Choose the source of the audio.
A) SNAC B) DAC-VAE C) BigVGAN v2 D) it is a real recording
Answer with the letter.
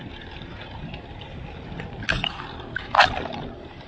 D